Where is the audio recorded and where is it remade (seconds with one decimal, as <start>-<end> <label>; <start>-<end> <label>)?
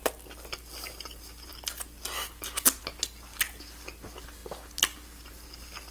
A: 0.0-5.9 recorded